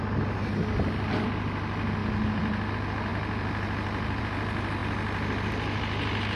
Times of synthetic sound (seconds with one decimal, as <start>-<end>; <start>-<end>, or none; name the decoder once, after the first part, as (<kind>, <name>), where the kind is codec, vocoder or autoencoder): none